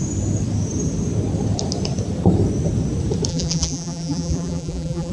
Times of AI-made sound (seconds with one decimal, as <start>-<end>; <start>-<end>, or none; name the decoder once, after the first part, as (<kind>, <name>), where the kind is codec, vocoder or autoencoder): 3.3-5.1 (vocoder, BigVGAN v2)